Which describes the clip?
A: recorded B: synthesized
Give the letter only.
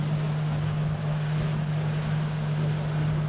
A